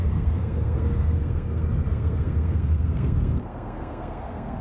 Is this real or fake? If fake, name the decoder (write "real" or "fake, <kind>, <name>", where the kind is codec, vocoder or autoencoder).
fake, codec, SNAC